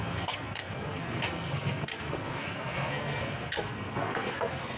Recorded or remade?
remade